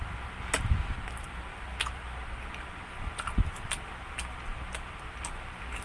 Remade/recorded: recorded